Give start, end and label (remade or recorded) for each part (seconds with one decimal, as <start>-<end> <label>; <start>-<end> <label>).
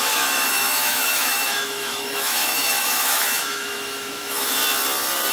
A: 0.0-4.6 remade; 4.6-5.3 recorded